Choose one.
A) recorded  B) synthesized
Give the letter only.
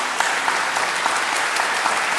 A